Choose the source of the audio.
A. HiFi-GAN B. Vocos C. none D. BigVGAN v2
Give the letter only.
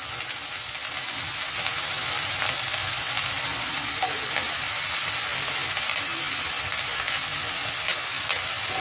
C